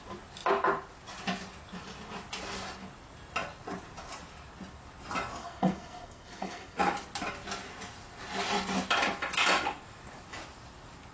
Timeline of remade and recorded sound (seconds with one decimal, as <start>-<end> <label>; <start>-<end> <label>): 0.0-5.4 recorded; 5.4-6.8 remade; 6.8-11.1 recorded